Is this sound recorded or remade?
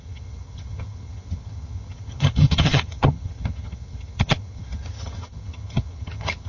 remade